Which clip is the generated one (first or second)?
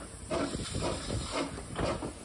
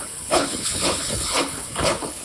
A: second